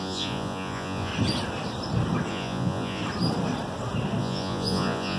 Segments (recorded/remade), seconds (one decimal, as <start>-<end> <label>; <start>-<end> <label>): 0.0-1.1 remade; 1.1-2.3 recorded; 2.3-3.0 remade; 3.0-4.2 recorded; 4.2-5.2 remade